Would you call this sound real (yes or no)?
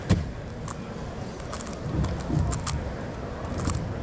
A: yes